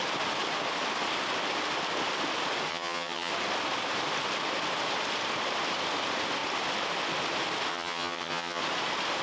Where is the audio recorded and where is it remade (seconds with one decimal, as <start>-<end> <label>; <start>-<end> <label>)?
0.0-2.7 recorded; 2.7-3.3 remade; 3.3-7.7 recorded; 7.7-8.6 remade; 8.6-9.2 recorded